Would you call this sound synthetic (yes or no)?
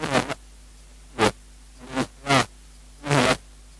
no